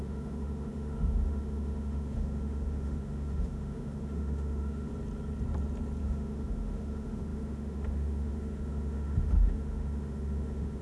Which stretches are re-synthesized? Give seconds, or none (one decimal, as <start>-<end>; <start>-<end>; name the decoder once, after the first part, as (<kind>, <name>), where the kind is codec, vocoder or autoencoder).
0.0-4.9 (autoencoder, DAC-VAE); 6.0-10.8